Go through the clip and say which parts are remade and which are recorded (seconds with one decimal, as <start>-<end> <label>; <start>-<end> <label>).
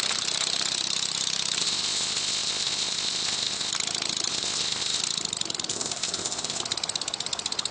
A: 0.0-1.6 recorded; 1.6-3.7 remade; 3.7-4.3 recorded; 4.3-5.0 remade; 5.0-5.7 recorded; 5.7-6.6 remade; 6.6-7.7 recorded